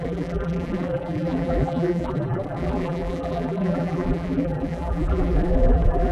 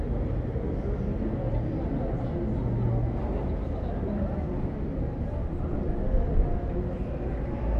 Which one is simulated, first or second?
first